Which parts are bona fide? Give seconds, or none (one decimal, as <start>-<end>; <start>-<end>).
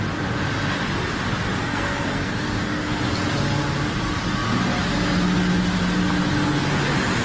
0.0-1.6; 3.0-7.2